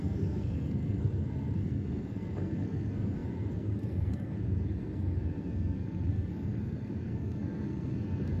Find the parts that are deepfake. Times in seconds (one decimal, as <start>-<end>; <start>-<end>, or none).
0.0-8.4